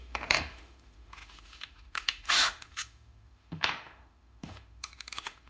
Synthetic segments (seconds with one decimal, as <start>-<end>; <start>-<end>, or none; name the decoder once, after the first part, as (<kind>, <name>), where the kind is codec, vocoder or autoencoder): 0.0-5.5 (autoencoder, DAC-VAE)